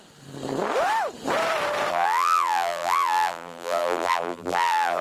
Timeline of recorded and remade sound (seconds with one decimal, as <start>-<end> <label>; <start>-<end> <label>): 0.0-1.9 recorded; 1.9-5.0 remade